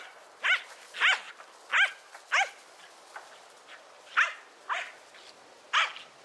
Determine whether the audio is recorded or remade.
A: recorded